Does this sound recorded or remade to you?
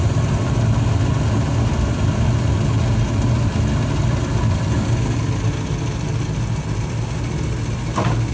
recorded